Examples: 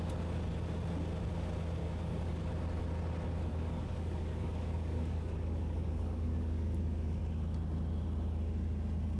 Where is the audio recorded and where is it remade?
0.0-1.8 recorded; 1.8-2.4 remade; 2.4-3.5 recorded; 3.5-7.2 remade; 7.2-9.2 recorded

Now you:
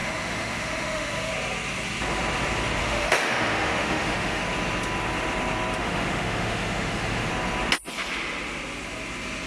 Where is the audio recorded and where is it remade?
0.0-1.3 remade; 1.3-2.8 recorded; 2.8-4.4 remade; 4.4-5.8 recorded; 5.8-7.3 remade; 7.3-9.5 recorded

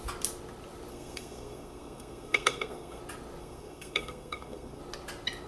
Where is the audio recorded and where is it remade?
0.0-0.9 recorded; 0.9-3.0 remade; 3.0-3.4 recorded; 3.4-4.8 remade; 4.8-5.5 recorded